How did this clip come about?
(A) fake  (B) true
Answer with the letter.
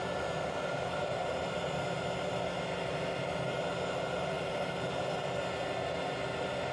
B